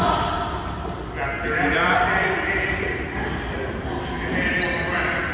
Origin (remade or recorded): recorded